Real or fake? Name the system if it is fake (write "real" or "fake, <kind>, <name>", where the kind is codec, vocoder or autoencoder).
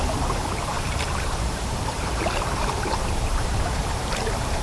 fake, vocoder, BigVGAN v2